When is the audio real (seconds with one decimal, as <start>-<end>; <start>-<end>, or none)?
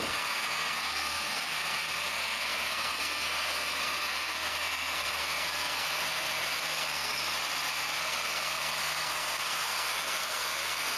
7.1-7.7